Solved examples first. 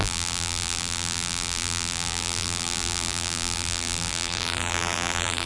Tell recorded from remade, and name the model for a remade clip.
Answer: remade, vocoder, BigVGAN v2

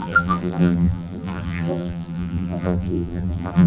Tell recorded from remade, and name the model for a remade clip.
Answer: remade, vocoder, BigVGAN v2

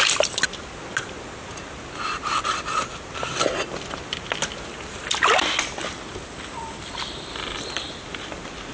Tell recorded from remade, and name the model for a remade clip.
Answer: recorded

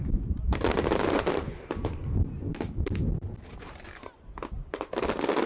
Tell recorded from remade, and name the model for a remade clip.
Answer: recorded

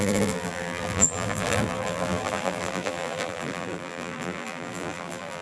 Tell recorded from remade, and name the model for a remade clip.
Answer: remade, vocoder, BigVGAN v2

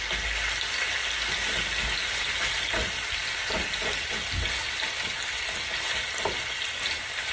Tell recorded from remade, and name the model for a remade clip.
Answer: recorded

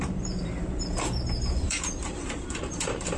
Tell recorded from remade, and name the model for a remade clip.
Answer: remade, vocoder, BigVGAN v2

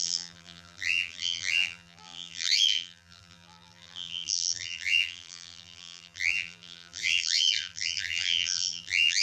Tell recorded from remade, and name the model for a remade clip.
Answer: remade, vocoder, BigVGAN v2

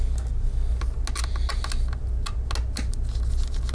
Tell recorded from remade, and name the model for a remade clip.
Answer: recorded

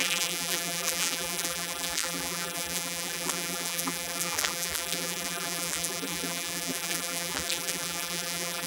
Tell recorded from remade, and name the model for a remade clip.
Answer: remade, vocoder, BigVGAN v2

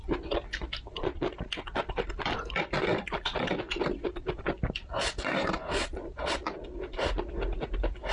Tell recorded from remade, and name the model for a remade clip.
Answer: recorded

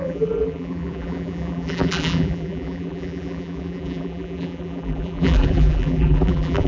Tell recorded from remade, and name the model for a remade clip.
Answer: remade, vocoder, BigVGAN v2